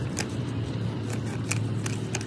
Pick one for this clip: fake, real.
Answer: real